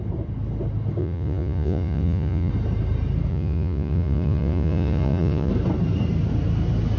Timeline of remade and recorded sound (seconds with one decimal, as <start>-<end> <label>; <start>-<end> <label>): 0.0-1.0 recorded; 1.0-2.5 remade; 2.5-3.3 recorded; 3.3-5.5 remade; 5.5-7.0 recorded